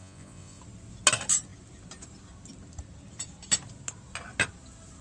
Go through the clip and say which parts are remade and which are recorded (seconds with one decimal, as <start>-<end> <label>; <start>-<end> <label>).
0.0-0.6 remade; 0.6-5.0 recorded